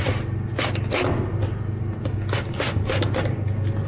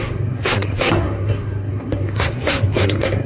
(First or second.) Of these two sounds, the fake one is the second